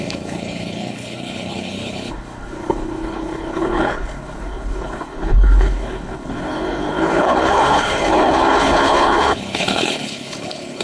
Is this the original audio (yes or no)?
no